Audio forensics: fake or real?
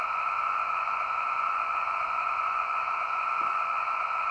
fake